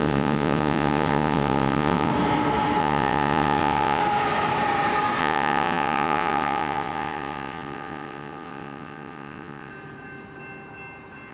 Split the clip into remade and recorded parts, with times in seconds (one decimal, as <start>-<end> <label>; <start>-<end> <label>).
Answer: 0.0-2.1 remade; 2.1-2.8 recorded; 2.8-4.0 remade; 4.0-5.2 recorded; 5.2-9.7 remade; 9.7-11.3 recorded